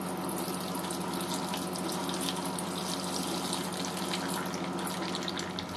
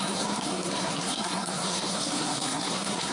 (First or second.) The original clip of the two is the first